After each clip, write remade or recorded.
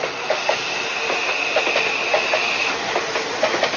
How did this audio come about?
recorded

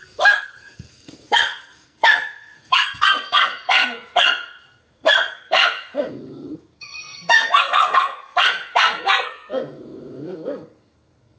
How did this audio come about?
remade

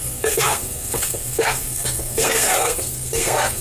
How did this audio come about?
remade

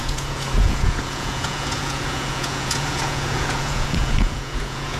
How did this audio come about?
remade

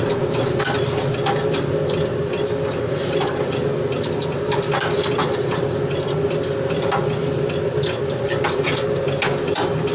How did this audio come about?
recorded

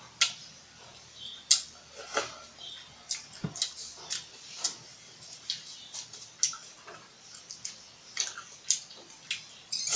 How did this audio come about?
recorded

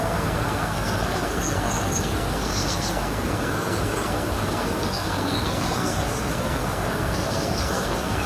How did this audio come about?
remade